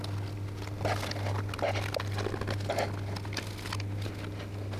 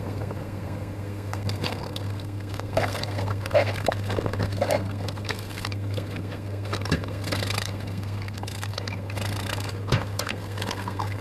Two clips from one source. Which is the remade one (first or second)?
second